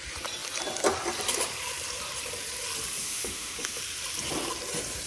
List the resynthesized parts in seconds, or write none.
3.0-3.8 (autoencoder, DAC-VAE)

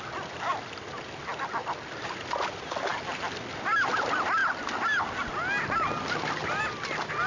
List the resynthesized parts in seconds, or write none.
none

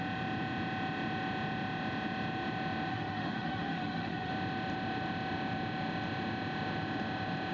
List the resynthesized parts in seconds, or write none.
2.9-4.3 (autoencoder, DAC-VAE)